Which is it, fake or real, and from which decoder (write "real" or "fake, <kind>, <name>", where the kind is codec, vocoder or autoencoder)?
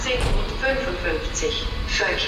real